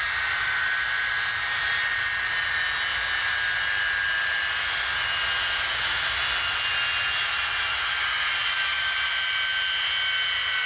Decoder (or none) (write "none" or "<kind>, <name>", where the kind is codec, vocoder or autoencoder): none